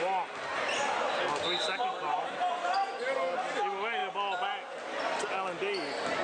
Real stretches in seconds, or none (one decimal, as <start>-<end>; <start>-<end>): 0.0-6.2